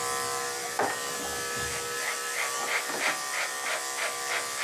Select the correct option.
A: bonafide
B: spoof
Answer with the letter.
B